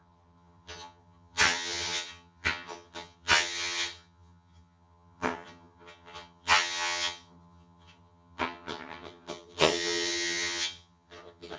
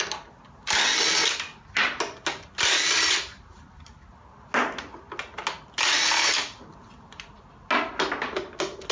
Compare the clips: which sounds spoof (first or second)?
first